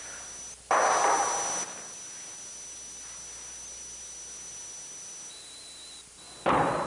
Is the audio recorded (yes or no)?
yes